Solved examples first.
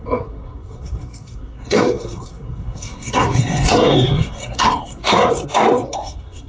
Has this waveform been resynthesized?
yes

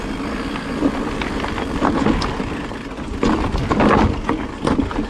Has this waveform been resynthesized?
no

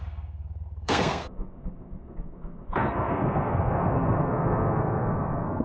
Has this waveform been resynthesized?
yes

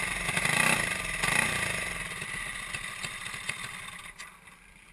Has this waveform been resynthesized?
no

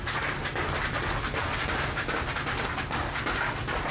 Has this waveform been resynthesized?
no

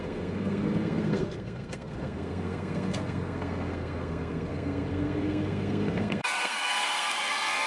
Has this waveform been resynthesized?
yes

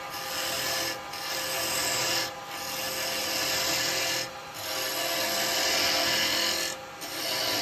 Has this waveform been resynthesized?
no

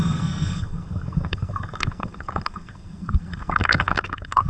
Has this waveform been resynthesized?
yes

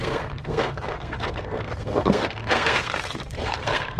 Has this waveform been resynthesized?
yes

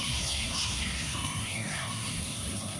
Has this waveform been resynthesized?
yes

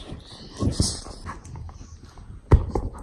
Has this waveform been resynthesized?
no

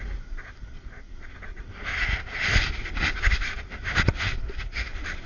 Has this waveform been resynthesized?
no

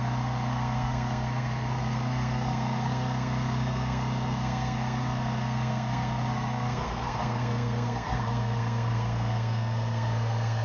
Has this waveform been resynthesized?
yes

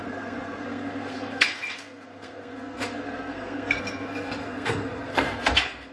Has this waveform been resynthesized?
yes